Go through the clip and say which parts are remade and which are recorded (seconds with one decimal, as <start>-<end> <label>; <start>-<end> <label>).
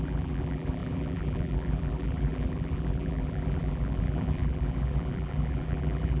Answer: 0.0-6.2 remade